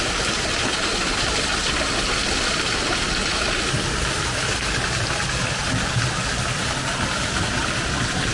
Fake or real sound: real